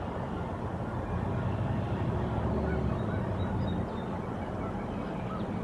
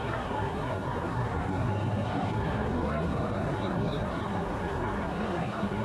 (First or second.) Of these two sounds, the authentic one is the first